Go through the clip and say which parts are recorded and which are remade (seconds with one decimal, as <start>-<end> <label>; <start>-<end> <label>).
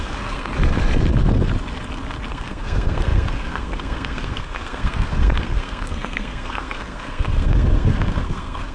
0.0-0.5 remade; 0.5-2.3 recorded; 2.3-8.7 remade